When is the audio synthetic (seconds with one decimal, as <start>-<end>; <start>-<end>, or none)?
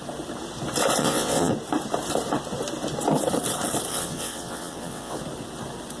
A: 1.0-1.5; 3.9-5.2